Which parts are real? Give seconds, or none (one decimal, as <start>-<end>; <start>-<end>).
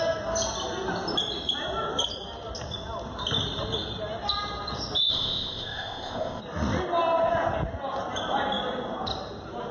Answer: 0.0-5.1; 6.4-9.7